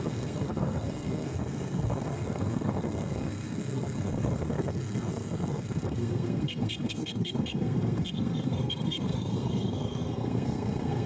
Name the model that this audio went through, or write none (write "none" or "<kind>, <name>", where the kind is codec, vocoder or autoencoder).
codec, SNAC